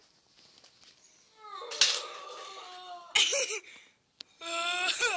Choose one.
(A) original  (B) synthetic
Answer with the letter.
A